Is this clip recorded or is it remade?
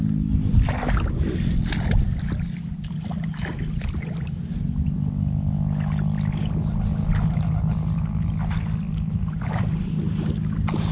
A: recorded